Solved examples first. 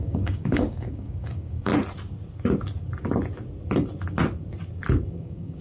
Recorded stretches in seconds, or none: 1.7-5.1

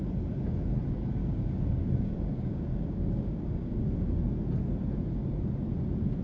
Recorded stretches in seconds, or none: 0.0-1.2; 3.9-6.2

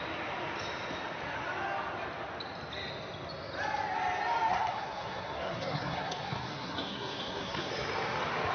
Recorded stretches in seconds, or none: 0.0-4.5; 7.7-8.5

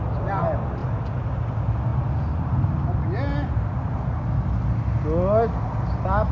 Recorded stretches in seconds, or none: 0.0-6.3

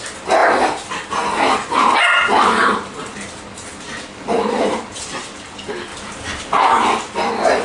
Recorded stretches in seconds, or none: 0.0-7.6

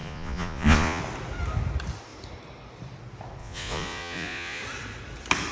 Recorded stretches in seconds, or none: 1.0-3.4; 4.6-5.5

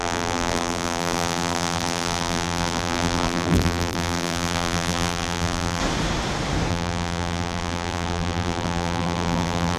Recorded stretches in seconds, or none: 5.8-6.7

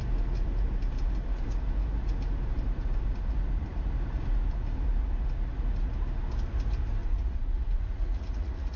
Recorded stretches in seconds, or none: 0.0-7.0